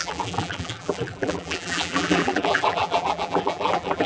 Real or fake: fake